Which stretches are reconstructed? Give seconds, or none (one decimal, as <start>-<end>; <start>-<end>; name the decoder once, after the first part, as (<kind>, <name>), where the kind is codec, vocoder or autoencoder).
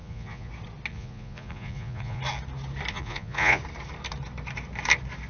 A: 0.0-0.5 (vocoder, Vocos); 0.9-2.2; 2.9-3.6